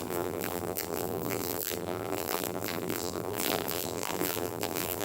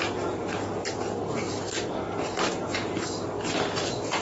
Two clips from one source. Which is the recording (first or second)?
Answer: second